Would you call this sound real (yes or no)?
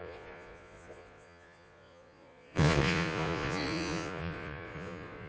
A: no